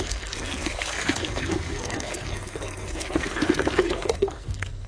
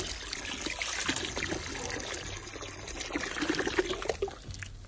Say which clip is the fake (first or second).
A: first